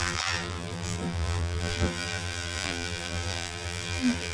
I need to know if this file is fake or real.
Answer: fake